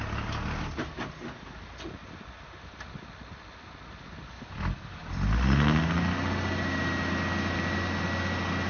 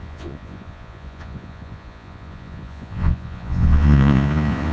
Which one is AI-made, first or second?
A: second